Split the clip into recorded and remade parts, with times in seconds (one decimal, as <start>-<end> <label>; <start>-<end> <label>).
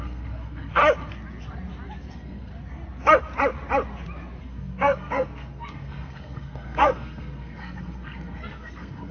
0.0-0.8 remade; 0.8-2.1 recorded; 2.1-2.5 remade; 2.5-4.4 recorded; 4.4-9.1 remade